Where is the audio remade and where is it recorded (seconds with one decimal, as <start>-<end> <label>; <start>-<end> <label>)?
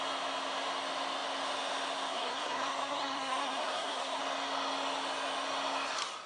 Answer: 0.0-2.1 recorded; 2.1-4.2 remade; 4.2-6.3 recorded